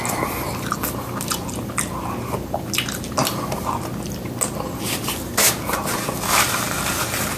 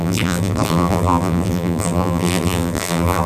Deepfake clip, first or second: second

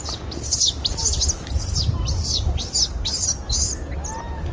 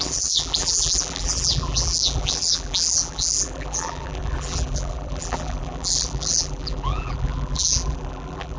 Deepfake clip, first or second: second